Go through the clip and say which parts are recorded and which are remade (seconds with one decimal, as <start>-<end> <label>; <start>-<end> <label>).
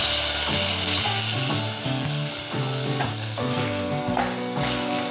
0.0-1.8 recorded; 1.8-2.3 remade; 2.3-3.1 recorded; 3.1-4.2 remade; 4.2-5.1 recorded